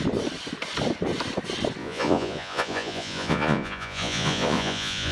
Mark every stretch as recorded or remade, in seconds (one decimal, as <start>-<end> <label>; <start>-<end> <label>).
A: 0.0-1.8 recorded; 1.8-5.1 remade